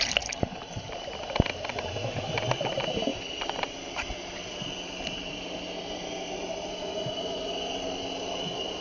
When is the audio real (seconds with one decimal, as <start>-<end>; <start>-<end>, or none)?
0.0-8.8